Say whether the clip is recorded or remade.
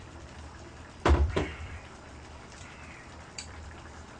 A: remade